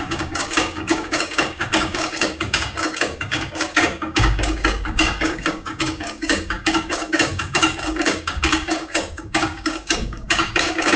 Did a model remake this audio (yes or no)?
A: yes